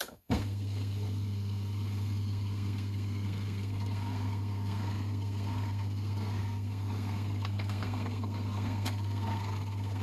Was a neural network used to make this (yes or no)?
yes